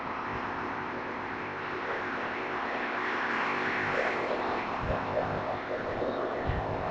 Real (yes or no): no